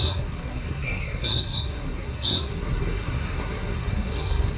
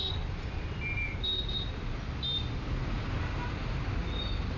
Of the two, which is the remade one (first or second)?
first